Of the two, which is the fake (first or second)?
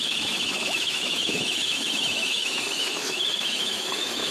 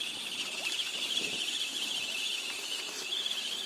first